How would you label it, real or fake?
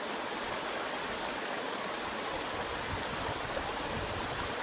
real